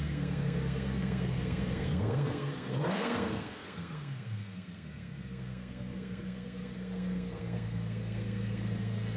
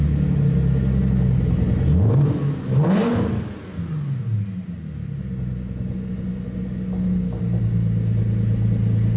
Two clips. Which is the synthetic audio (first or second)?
first